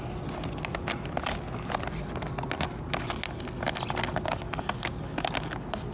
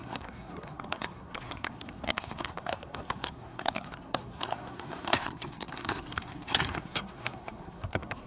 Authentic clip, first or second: first